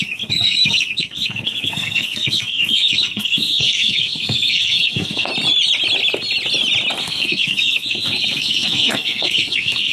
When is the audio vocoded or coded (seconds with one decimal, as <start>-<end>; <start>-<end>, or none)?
0.0-5.3; 7.0-9.9